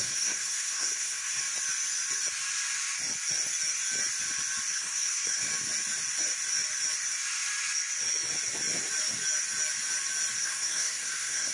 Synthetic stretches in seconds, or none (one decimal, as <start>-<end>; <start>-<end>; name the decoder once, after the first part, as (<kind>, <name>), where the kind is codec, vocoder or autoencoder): 0.0-1.4 (codec, SNAC); 4.7-5.5; 10.4-11.5